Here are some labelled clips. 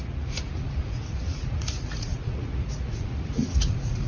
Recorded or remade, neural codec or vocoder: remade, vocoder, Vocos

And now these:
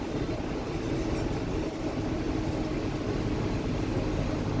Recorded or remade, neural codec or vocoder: recorded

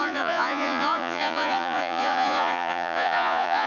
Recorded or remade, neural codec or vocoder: remade, vocoder, Vocos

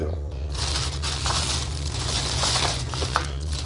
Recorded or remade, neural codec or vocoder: remade, vocoder, Vocos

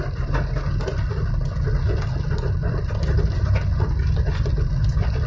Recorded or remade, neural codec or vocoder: recorded